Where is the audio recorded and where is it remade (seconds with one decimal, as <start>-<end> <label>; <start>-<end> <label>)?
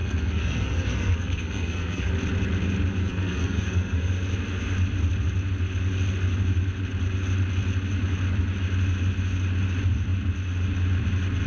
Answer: 0.0-2.1 remade; 2.1-3.0 recorded; 3.0-4.1 remade; 4.1-11.5 recorded